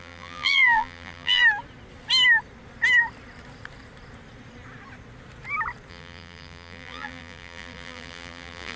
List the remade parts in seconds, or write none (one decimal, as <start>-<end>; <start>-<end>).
0.0-1.4; 5.9-8.8